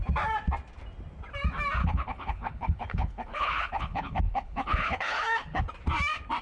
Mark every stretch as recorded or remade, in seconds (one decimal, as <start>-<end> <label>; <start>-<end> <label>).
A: 0.0-1.8 recorded; 1.8-5.6 remade; 5.6-6.4 recorded

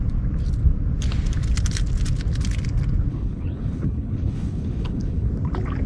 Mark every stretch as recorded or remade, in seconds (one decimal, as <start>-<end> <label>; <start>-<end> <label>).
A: 0.0-3.1 recorded; 3.1-5.3 remade; 5.3-5.9 recorded